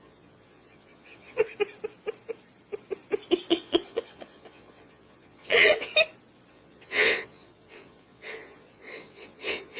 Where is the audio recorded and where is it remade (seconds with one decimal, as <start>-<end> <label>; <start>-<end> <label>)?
0.0-1.5 remade; 1.5-3.5 recorded; 3.5-5.9 remade; 5.9-6.5 recorded; 6.5-9.8 remade